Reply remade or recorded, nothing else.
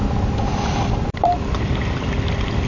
recorded